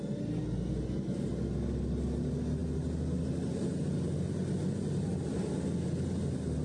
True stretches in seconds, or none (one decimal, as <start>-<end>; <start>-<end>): 0.0-6.6